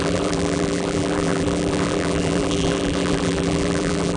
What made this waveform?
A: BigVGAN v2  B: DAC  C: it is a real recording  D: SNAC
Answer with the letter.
A